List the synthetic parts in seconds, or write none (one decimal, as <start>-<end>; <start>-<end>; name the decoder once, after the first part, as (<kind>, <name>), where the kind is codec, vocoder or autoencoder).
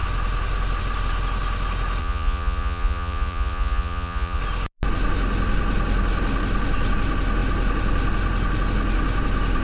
2.0-4.4 (vocoder, Vocos)